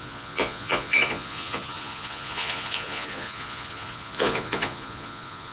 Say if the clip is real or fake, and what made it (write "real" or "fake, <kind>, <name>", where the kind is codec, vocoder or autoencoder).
fake, vocoder, Vocos